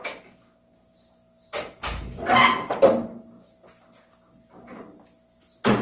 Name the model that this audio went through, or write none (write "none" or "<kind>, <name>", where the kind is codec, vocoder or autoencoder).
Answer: none